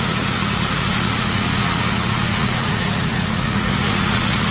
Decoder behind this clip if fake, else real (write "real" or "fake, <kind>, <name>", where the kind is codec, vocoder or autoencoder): fake, vocoder, Vocos